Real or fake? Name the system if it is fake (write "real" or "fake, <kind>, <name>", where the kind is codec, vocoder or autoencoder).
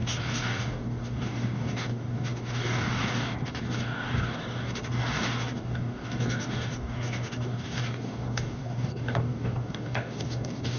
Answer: fake, codec, DAC